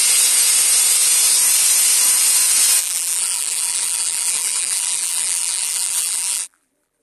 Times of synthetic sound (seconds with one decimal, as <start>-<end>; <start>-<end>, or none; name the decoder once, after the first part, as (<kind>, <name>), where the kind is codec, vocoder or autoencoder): 2.8-7.0 (vocoder, BigVGAN v2)